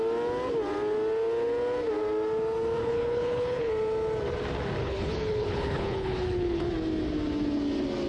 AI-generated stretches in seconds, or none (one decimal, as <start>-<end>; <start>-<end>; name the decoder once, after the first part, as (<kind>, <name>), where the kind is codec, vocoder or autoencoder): 2.8-3.7 (codec, HILCodec); 4.8-6.6